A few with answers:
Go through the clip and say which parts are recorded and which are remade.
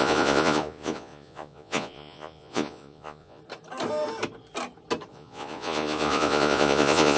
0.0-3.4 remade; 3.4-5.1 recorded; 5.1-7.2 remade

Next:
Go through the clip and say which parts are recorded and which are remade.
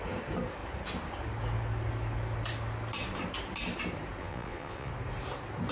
0.0-4.2 recorded; 4.2-4.9 remade; 4.9-5.7 recorded